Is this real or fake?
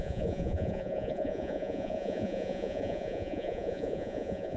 fake